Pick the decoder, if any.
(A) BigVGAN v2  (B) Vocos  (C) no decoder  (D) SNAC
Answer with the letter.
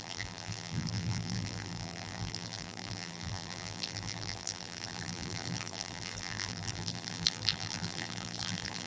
A